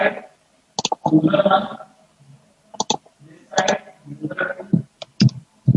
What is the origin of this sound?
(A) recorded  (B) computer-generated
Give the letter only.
A